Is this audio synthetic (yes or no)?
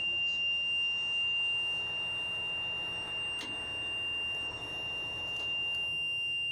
no